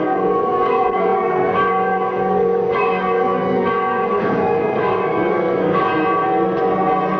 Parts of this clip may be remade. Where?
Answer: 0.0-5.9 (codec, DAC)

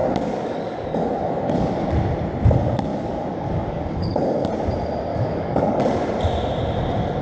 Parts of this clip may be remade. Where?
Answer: 0.0-1.8 (codec, DAC); 2.9-4.5; 5.1-5.8

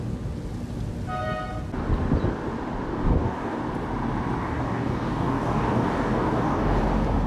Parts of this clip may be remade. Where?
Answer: 2.9-3.6 (codec, DAC); 4.4-6.8

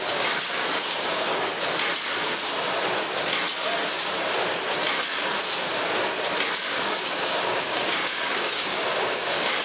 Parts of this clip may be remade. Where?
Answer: 0.0-1.5 (codec, DAC); 6.7-9.6

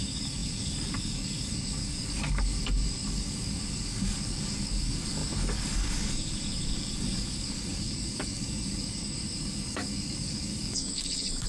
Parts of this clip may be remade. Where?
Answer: 0.0-11.5 (codec, DAC)

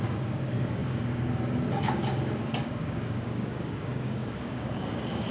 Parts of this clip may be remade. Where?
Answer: 0.0-5.3 (codec, DAC)

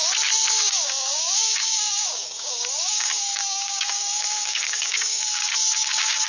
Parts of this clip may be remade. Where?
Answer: 0.5-6.3 (codec, DAC)

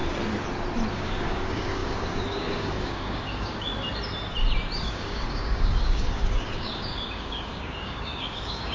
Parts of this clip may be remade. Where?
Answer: 0.9-3.7 (codec, DAC); 4.8-8.7